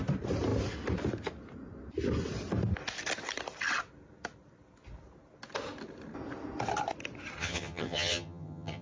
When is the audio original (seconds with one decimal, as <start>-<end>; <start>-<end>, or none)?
0.0-7.4